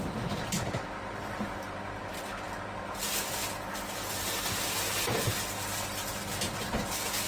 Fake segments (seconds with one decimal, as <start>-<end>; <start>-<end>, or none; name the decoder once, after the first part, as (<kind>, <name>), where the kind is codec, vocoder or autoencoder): 0.0-3.4 (vocoder, BigVGAN v2); 4.1-7.3